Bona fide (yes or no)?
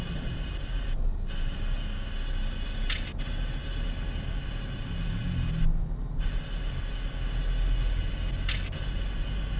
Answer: yes